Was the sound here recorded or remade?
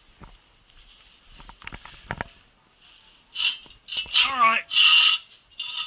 recorded